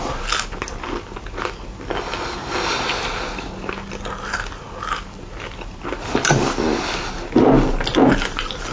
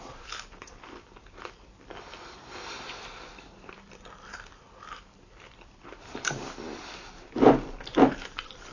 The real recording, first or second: first